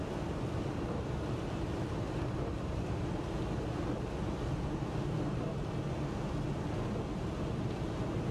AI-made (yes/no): no